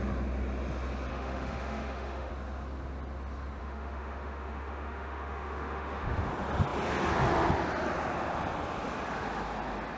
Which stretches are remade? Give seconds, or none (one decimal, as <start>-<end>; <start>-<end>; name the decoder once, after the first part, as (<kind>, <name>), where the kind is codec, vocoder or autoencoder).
1.1-2.3 (autoencoder, DAC-VAE); 3.6-6.3